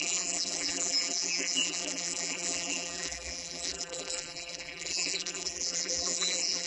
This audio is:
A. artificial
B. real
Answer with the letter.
A